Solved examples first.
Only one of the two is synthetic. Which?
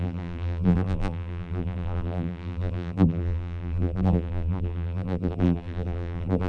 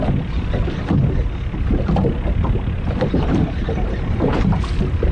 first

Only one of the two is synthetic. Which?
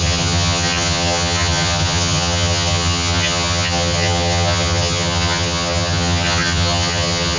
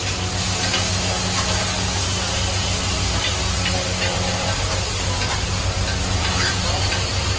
first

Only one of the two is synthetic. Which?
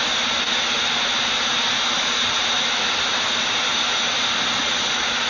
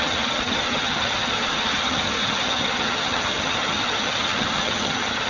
second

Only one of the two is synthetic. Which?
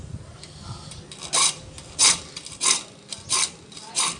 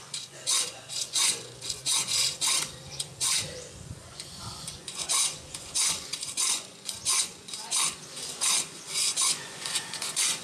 second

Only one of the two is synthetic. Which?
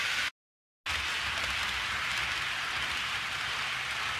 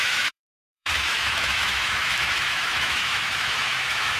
second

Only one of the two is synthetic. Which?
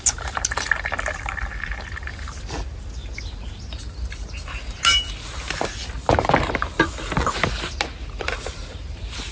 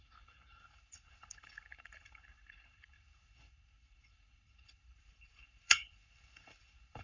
second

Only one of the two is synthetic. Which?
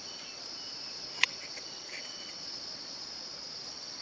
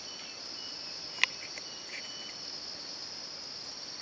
first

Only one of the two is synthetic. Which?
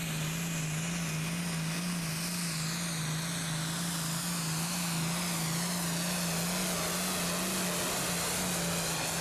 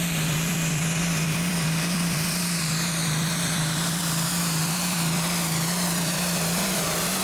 second